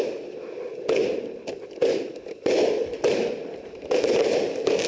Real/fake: real